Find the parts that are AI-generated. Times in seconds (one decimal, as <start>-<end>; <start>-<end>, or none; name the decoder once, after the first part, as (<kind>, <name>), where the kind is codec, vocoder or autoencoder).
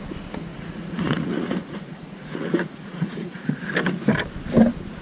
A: 0.5-3.5 (vocoder, Vocos)